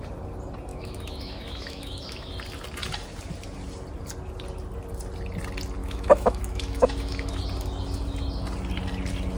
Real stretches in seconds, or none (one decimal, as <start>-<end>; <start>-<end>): 0.0-0.7; 2.3-5.8; 7.4-9.4